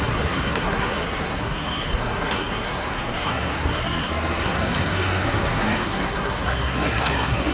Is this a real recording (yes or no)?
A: no